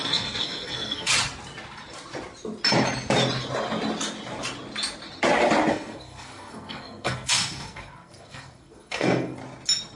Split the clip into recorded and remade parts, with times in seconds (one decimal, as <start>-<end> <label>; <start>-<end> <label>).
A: 0.0-1.1 remade; 1.1-5.7 recorded; 5.7-9.4 remade; 9.4-10.0 recorded